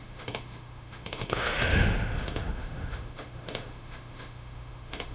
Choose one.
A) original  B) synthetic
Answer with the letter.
B